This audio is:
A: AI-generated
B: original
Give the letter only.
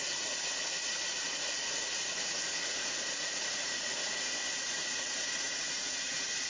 A